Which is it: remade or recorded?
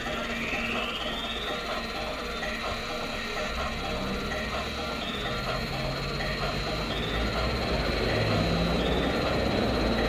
recorded